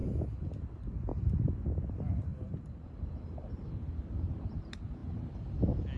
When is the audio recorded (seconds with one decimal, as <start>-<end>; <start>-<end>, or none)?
0.7-1.1; 1.9-2.3; 3.6-6.0